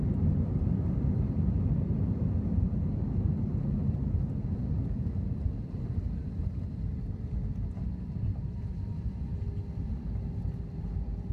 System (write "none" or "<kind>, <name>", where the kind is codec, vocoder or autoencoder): none